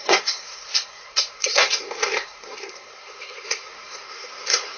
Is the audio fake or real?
fake